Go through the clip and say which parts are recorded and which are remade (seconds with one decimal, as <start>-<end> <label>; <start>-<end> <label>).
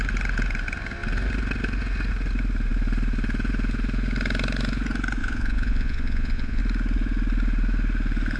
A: 0.0-5.2 recorded; 5.2-6.6 remade; 6.6-8.4 recorded